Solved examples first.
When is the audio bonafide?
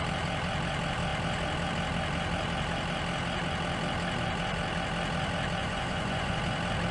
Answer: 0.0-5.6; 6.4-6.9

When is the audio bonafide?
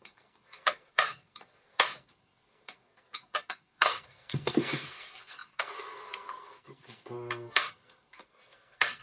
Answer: none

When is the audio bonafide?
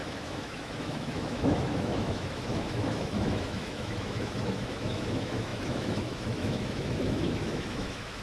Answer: none